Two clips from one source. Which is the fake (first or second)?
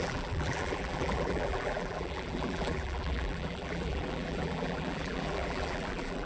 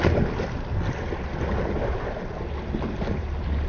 first